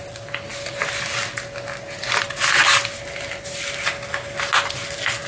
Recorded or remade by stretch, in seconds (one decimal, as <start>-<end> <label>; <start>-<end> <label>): 0.0-5.3 recorded

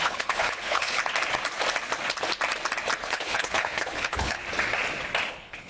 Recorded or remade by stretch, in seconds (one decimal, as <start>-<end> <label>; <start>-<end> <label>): 0.0-1.0 remade; 1.0-3.0 recorded; 3.0-4.4 remade; 4.4-5.3 recorded; 5.3-5.7 remade

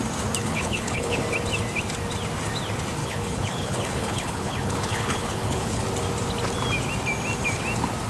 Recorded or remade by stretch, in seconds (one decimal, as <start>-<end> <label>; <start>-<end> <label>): 0.0-0.4 recorded; 0.4-1.2 remade; 1.2-3.0 recorded; 3.0-5.8 remade; 5.8-8.1 recorded

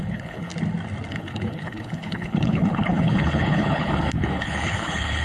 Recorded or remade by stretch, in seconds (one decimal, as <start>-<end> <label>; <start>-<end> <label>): 0.0-0.5 remade; 0.5-1.1 recorded; 1.1-5.2 remade

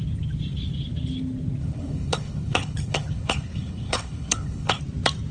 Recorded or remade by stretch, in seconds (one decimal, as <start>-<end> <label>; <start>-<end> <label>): 0.0-1.6 recorded; 1.6-4.8 remade; 4.8-5.3 recorded